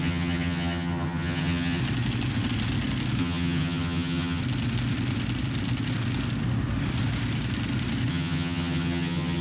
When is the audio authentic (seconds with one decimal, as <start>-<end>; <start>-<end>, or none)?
1.8-3.2; 4.4-8.1